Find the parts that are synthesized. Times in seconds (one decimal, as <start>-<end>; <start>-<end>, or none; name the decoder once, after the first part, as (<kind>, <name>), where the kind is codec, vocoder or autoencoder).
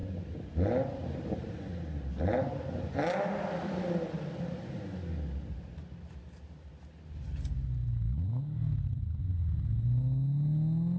none